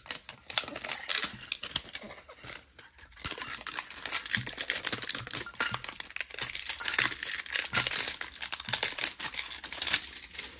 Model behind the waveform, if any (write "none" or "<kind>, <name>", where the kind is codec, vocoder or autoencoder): none